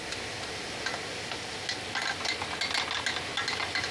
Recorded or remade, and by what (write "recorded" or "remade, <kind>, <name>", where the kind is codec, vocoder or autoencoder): recorded